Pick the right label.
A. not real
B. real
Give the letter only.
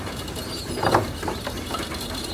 A